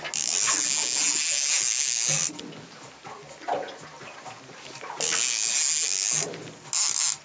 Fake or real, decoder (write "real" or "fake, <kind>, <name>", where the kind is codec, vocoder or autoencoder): real